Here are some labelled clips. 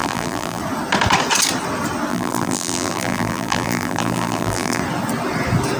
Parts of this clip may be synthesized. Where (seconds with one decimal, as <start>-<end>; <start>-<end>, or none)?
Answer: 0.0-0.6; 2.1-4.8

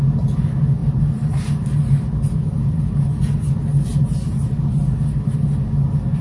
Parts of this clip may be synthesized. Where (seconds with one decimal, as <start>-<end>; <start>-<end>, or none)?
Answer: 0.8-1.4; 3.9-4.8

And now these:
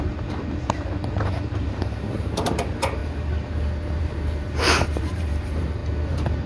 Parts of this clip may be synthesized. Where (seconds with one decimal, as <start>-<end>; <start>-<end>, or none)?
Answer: 0.0-3.0; 4.0-5.8

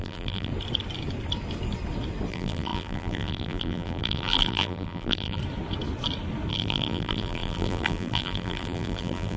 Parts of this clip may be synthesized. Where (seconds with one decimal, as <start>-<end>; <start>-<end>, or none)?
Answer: 0.0-0.5; 2.3-5.4; 6.5-9.4